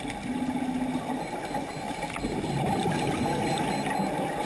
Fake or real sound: real